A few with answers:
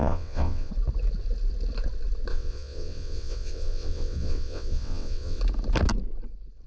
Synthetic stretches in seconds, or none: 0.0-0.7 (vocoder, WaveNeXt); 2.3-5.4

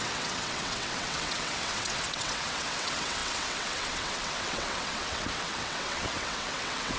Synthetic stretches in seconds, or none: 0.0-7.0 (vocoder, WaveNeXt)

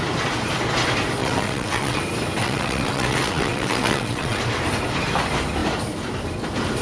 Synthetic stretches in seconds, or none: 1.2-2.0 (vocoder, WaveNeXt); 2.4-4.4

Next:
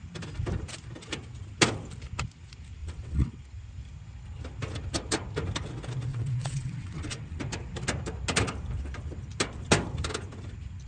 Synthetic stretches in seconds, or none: 2.8-3.4 (vocoder, WaveNeXt); 6.1-7.4

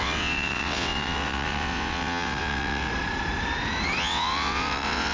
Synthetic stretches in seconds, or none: 0.0-2.9 (vocoder, WaveNeXt); 4.0-5.1

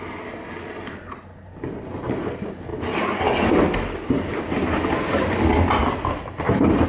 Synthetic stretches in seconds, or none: none

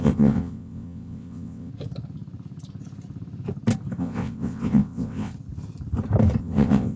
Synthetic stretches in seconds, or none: 0.0-1.7 (vocoder, WaveNeXt); 4.0-5.3; 6.4-7.0